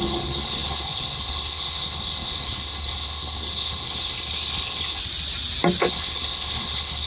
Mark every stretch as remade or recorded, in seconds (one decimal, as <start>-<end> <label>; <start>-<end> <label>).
0.0-5.0 remade; 5.0-5.8 recorded; 5.8-7.1 remade